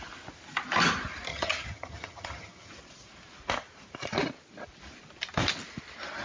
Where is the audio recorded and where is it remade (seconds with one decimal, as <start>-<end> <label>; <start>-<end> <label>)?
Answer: 0.0-1.3 recorded; 1.3-2.7 remade; 2.7-6.2 recorded